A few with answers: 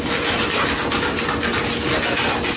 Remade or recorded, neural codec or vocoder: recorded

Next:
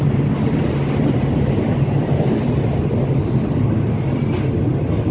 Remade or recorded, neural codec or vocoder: recorded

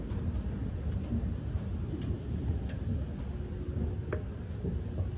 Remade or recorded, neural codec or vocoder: recorded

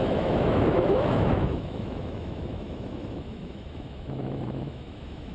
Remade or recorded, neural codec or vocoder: remade, autoencoder, DAC-VAE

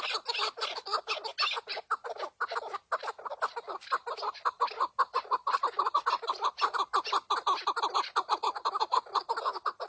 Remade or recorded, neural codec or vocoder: recorded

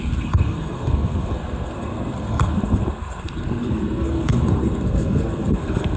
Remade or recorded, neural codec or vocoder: remade, codec, SNAC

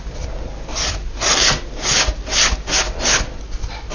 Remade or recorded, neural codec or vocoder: recorded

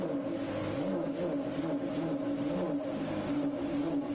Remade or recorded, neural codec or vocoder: recorded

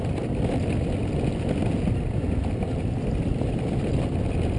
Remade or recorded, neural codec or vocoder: recorded